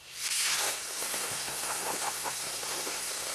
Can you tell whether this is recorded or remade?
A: remade